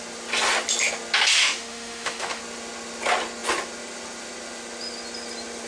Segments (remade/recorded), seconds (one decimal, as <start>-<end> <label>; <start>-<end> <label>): 0.0-1.4 recorded; 1.4-2.4 remade; 2.4-5.7 recorded